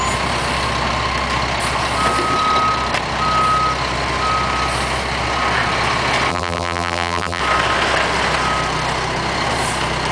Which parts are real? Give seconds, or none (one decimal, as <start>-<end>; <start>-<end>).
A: 0.0-6.3; 7.4-10.1